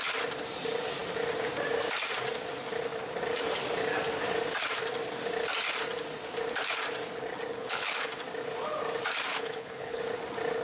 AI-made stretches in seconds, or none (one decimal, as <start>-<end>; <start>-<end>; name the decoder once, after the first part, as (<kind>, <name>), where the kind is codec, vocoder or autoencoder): 7.5-8.1 (codec, HILCodec); 9.3-10.0